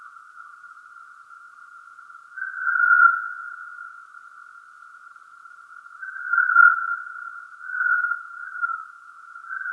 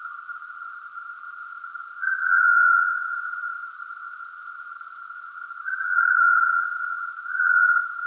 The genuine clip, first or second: first